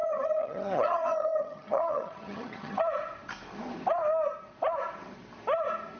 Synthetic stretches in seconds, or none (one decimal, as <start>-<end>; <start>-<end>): 0.0-2.8